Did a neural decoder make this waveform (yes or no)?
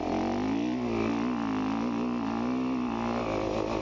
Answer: no